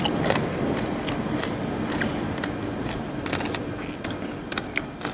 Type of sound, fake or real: real